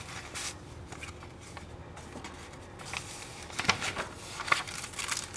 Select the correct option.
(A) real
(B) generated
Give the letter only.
A